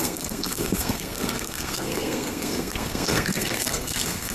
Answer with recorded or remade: remade